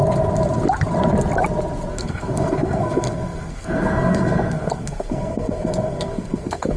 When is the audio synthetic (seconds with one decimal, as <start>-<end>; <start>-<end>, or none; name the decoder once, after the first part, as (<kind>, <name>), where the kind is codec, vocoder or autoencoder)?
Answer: 1.9-6.8 (codec, SNAC)